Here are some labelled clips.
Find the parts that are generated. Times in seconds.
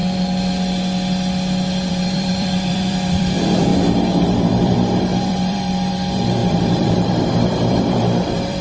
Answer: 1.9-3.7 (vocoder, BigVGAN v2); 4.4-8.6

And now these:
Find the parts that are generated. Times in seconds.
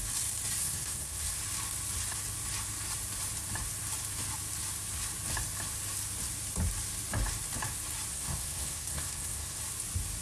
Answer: 0.6-1.4 (codec, SNAC); 8.1-9.6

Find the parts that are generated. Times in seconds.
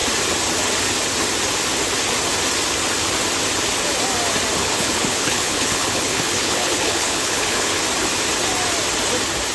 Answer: 4.6-7.8 (codec, HILCodec)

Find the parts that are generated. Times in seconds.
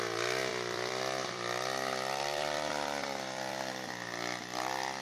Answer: 0.5-3.5 (vocoder, BigVGAN v2)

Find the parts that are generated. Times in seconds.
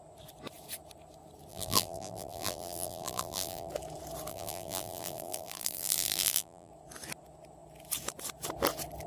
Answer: 1.5-3.7 (vocoder, BigVGAN v2); 4.3-6.7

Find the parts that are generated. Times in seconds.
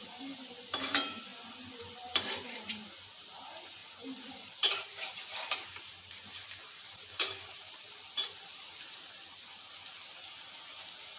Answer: 0.0-1.3 (vocoder, BigVGAN v2); 1.8-11.2